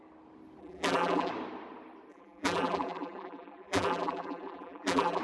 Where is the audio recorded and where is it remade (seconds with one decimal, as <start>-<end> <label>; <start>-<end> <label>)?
0.0-0.6 recorded; 0.6-1.3 remade; 1.3-2.1 recorded; 2.1-5.2 remade